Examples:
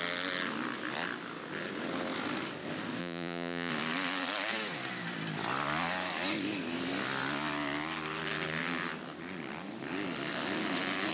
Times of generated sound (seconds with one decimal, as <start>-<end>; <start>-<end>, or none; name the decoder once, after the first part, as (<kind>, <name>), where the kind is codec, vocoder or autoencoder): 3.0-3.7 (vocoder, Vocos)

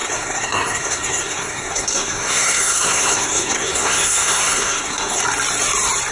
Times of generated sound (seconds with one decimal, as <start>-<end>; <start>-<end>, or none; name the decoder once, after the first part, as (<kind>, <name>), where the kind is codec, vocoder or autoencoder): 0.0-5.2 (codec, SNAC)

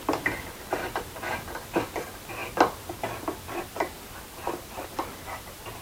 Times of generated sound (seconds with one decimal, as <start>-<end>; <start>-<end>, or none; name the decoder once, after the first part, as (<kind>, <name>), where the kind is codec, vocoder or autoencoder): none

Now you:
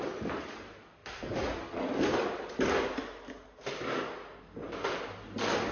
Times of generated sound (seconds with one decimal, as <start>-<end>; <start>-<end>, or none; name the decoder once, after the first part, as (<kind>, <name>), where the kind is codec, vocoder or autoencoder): none

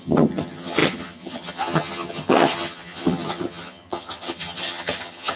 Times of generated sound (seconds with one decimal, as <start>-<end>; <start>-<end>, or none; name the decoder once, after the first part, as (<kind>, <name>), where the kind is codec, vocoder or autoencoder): 0.0-5.4 (vocoder, HiFi-GAN)